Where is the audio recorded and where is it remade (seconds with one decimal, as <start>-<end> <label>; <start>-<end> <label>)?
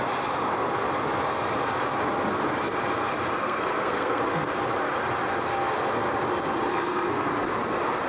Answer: 0.0-3.4 recorded; 3.4-4.2 remade; 4.2-6.7 recorded; 6.7-7.3 remade; 7.3-8.1 recorded